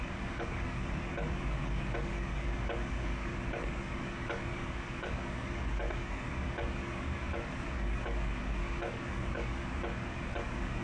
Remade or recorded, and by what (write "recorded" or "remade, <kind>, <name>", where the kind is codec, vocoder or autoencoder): remade, codec, DAC